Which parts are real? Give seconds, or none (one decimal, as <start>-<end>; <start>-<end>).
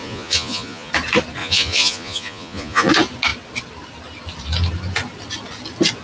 0.9-1.4; 2.9-6.0